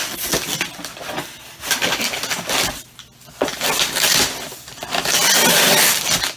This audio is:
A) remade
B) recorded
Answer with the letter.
B